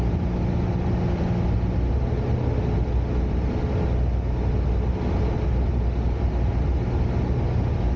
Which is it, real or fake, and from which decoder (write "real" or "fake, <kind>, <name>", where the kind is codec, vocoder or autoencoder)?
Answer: real